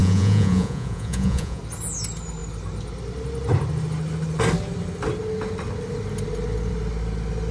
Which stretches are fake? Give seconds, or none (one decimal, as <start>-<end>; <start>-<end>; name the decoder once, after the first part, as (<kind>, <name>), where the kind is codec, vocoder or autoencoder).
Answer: 0.0-1.6 (vocoder, Vocos)